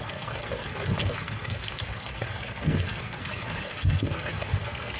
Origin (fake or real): fake